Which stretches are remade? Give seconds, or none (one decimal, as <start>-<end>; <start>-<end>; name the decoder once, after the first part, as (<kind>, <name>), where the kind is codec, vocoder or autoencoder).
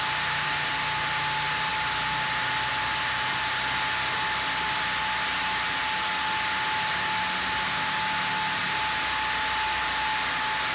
none